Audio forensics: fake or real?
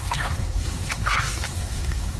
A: fake